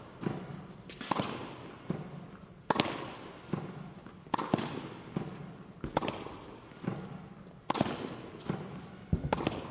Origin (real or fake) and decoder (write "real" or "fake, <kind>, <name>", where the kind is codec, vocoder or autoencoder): real